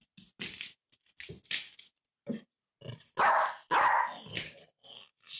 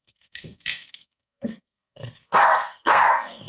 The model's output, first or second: second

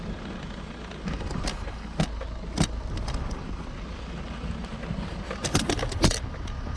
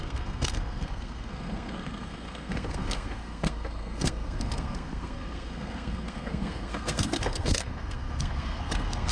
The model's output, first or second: second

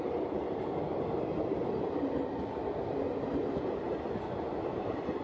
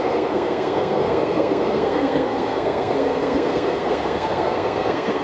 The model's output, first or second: second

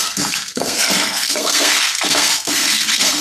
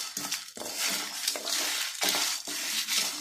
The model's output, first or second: first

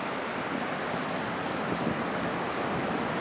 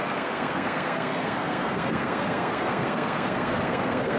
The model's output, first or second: second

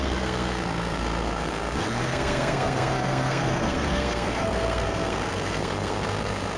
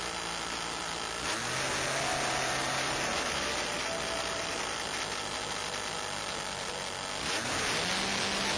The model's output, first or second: first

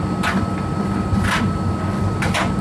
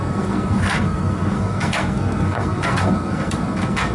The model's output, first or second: second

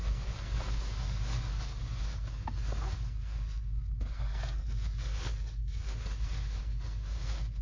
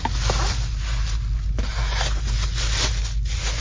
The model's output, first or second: first